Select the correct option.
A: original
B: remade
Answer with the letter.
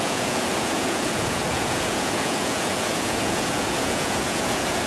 B